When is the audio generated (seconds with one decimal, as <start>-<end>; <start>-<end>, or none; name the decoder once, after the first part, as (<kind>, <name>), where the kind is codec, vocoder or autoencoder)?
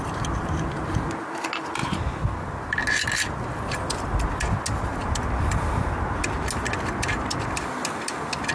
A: 1.8-2.8 (vocoder, BigVGAN v2)